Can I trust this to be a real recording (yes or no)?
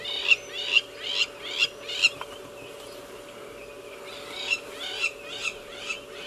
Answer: yes